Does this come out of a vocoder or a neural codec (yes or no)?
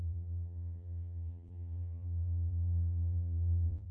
yes